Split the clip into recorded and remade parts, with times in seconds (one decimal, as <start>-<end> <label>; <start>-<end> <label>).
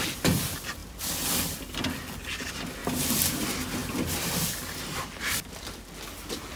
0.0-2.8 recorded; 2.8-3.4 remade; 3.4-3.8 recorded; 3.8-5.4 remade; 5.4-6.6 recorded